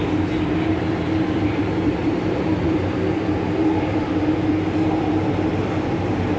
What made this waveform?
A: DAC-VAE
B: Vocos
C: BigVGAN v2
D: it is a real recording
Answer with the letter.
C